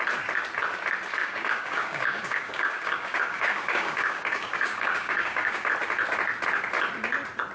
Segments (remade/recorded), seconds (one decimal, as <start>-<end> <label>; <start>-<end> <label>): 0.0-1.2 recorded; 1.2-5.7 remade; 5.7-7.5 recorded